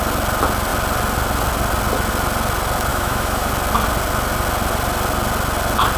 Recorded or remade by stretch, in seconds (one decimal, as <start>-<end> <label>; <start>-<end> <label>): 0.0-2.9 recorded; 2.9-3.5 remade; 3.5-6.0 recorded